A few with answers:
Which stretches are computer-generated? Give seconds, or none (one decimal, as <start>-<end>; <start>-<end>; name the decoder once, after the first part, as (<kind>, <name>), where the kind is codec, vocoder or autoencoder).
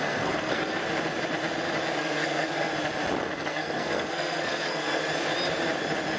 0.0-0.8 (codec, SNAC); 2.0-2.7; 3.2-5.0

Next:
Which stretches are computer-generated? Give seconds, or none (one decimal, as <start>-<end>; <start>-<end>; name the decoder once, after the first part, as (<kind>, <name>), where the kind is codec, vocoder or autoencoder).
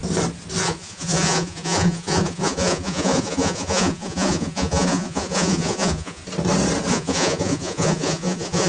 0.6-6.2 (vocoder, Vocos); 6.9-8.7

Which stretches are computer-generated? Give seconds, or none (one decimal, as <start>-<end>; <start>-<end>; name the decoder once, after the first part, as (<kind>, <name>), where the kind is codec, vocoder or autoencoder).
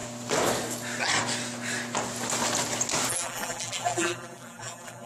3.1-5.1 (vocoder, BigVGAN v2)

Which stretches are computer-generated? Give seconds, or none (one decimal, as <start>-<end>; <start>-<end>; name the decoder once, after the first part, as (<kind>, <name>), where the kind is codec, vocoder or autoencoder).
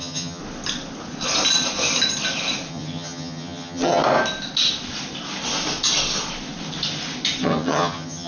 0.0-0.4 (vocoder, HiFi-GAN); 2.7-4.0; 7.4-8.3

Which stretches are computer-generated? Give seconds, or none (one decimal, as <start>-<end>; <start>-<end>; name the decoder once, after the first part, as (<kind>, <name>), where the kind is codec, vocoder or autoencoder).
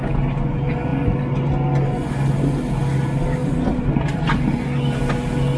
none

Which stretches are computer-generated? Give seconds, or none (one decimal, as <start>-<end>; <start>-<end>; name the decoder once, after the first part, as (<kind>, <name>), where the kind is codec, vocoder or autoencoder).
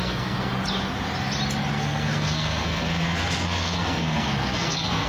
0.0-0.5 (codec, SNAC); 1.7-5.1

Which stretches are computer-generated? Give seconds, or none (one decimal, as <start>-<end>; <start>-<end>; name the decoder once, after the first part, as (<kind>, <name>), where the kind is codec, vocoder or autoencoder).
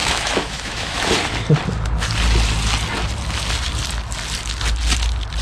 0.0-1.1 (autoencoder, DAC-VAE)